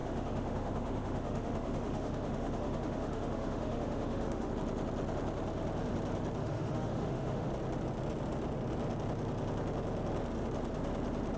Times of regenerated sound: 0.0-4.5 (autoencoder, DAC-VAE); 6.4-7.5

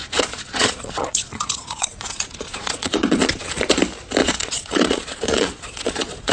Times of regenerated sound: 0.0-3.8 (vocoder, Vocos); 4.2-6.3

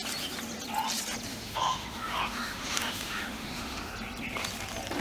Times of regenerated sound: 1.3-3.9 (autoencoder, DAC-VAE)

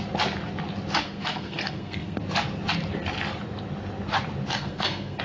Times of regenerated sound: 1.0-2.2 (codec, SNAC); 4.5-5.2

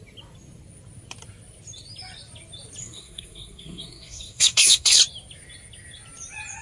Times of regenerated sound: 2.8-5.0 (codec, SNAC)

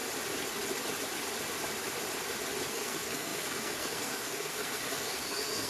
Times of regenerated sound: 2.7-5.7 (codec, SNAC)

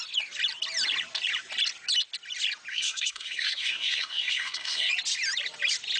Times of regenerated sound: 2.7-4.9 (codec, SNAC)

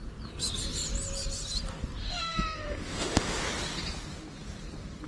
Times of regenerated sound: 2.0-3.4 (autoencoder, DAC-VAE)